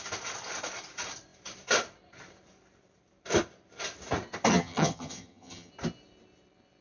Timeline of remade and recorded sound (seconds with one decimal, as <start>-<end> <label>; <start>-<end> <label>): 0.0-4.5 recorded; 4.5-5.7 remade; 5.7-6.8 recorded